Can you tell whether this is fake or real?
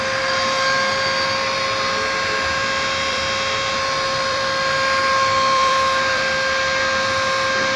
fake